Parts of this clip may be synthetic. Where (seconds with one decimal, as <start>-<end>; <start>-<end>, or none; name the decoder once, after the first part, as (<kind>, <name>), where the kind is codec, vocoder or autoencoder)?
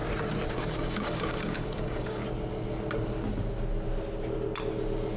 0.5-2.2 (codec, DAC)